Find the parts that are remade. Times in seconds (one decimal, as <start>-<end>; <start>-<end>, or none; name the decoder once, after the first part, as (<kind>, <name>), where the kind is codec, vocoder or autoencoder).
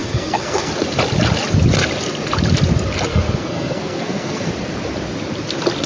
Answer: 0.0-0.7 (codec, SNAC); 3.1-4.5